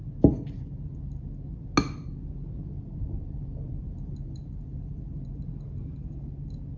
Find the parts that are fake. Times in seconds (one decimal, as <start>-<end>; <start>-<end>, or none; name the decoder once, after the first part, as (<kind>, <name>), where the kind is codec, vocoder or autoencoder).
2.6-5.1 (vocoder, BigVGAN v2)